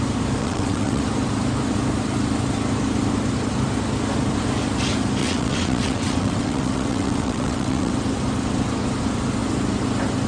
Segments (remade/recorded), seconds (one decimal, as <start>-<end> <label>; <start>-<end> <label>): 0.0-0.4 recorded; 0.4-1.0 remade; 1.0-5.2 recorded; 5.2-7.9 remade; 7.9-10.3 recorded